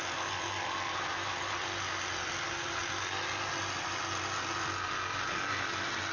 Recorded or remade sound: recorded